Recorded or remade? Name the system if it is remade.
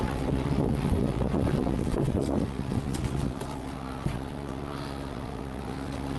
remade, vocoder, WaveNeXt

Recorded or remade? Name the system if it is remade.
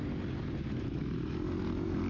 recorded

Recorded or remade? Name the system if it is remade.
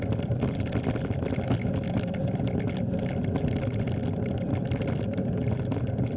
recorded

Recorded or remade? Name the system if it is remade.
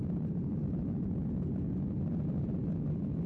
recorded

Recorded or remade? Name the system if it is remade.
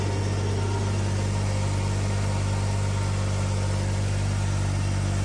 recorded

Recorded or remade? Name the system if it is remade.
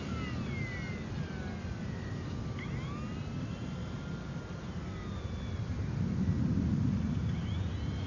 recorded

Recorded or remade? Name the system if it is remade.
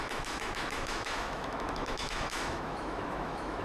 remade, autoencoder, DAC-VAE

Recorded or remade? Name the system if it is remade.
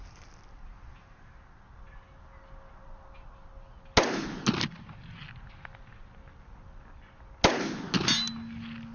recorded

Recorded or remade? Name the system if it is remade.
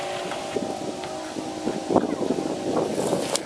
recorded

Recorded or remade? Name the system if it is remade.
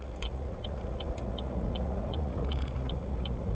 remade, vocoder, Vocos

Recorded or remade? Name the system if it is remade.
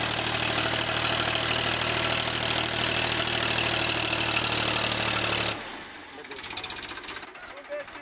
recorded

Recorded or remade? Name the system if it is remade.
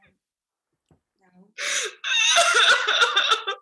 recorded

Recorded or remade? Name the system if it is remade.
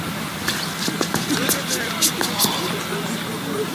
recorded